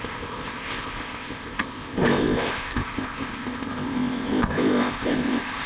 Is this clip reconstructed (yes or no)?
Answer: yes